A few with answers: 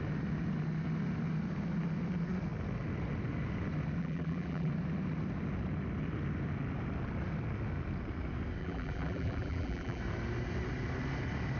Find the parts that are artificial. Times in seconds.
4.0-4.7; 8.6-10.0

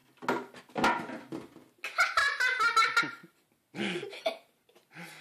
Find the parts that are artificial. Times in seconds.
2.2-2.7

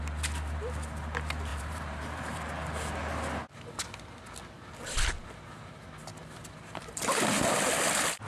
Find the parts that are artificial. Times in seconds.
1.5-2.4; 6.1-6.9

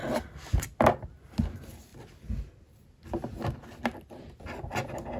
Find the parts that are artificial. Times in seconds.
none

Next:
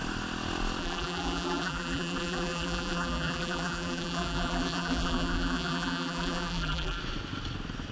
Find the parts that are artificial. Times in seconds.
0.8-7.0

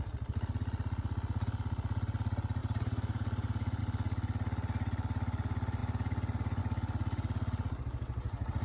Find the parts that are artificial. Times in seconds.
2.6-3.8

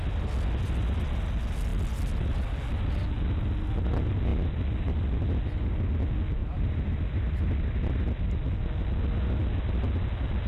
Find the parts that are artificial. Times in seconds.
6.4-7.5